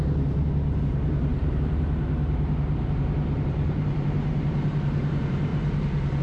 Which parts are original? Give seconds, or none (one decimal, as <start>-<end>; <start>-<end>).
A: 5.5-6.2